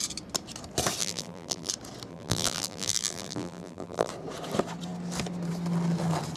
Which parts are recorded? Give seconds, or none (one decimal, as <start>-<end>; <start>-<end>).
0.0-1.0; 1.7-2.1; 4.1-6.4